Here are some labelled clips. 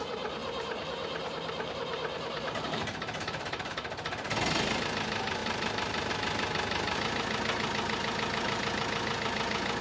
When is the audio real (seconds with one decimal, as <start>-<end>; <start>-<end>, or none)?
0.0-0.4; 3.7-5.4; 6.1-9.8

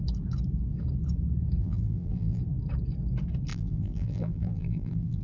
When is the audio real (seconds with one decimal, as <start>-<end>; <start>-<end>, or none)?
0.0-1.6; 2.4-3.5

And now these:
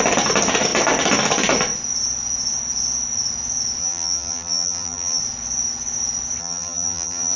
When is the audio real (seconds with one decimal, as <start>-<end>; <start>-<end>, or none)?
0.0-3.8; 5.2-6.4

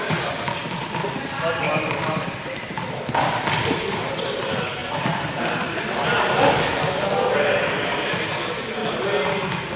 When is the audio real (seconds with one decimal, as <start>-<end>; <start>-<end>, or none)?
0.0-4.8; 5.8-9.8

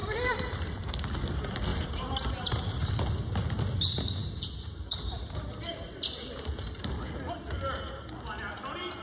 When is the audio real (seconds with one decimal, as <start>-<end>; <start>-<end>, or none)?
1.0-1.7; 2.9-4.2; 5.0-9.0

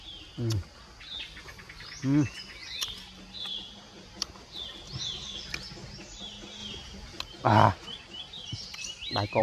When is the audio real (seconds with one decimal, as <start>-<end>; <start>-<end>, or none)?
0.0-7.8

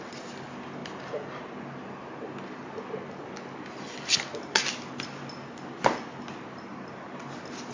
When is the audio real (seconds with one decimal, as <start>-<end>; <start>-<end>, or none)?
0.0-0.8; 1.4-7.7